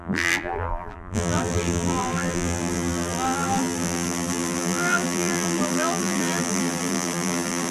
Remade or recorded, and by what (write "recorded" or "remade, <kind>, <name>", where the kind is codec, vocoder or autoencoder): remade, vocoder, BigVGAN v2